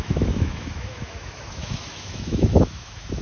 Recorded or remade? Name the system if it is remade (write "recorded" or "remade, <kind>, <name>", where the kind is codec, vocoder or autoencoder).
remade, autoencoder, DAC-VAE